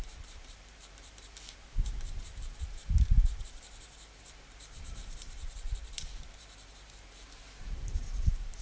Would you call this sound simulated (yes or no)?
yes